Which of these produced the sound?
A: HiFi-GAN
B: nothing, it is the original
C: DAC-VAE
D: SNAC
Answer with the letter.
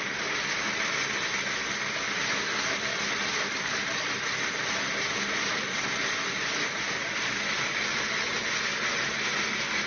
B